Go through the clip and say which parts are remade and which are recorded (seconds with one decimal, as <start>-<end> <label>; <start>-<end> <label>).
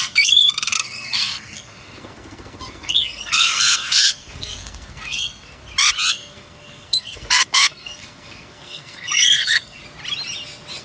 0.0-5.6 remade; 5.6-6.1 recorded; 6.1-9.8 remade; 9.8-10.8 recorded